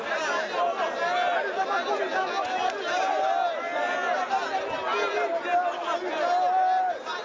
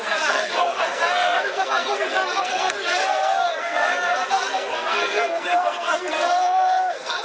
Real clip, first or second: first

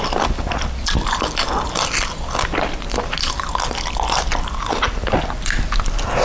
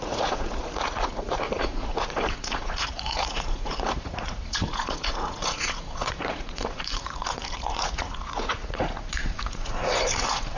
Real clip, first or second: first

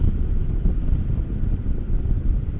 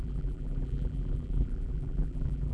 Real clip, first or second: first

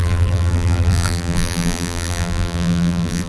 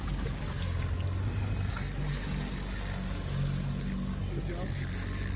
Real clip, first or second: second